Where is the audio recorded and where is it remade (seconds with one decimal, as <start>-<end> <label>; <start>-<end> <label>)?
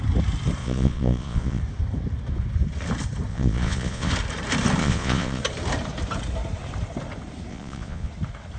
0.0-0.6 recorded; 0.6-1.6 remade; 1.6-3.3 recorded; 3.3-4.1 remade; 4.1-4.8 recorded; 4.8-5.4 remade; 5.4-7.5 recorded; 7.5-8.1 remade; 8.1-8.6 recorded